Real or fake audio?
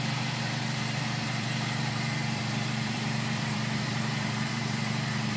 fake